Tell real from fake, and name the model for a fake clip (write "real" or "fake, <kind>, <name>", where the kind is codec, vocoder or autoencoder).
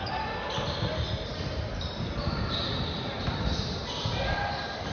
real